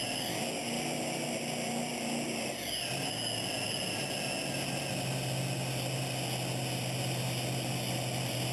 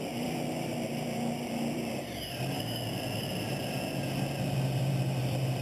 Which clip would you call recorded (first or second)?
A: first